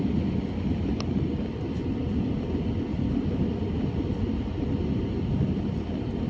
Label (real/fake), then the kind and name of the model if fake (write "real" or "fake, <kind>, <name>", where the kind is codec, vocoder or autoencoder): real